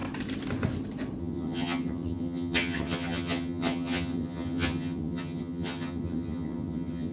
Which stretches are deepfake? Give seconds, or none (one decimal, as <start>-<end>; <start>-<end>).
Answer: 1.2-7.1